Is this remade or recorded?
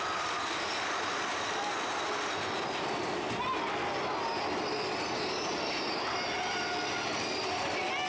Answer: recorded